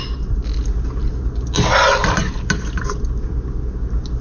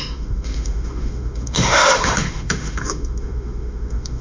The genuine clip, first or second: first